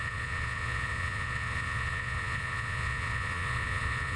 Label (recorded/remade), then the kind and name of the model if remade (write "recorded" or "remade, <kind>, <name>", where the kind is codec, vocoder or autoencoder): remade, vocoder, Vocos